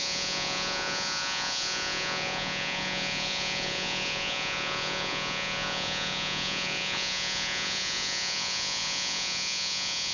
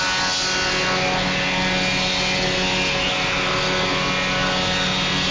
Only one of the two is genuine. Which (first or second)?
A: second